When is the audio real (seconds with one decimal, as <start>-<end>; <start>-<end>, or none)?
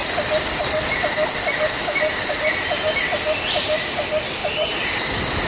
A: 0.0-4.4